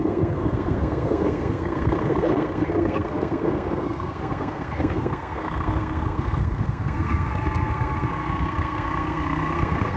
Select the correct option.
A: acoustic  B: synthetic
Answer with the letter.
B